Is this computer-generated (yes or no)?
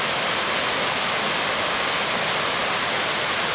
no